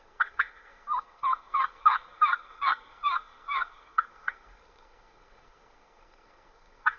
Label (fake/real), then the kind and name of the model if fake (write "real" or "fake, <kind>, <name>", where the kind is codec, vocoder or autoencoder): fake, codec, SNAC